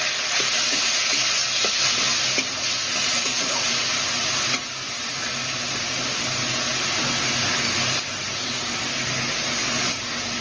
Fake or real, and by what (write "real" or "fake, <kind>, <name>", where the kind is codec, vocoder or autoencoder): real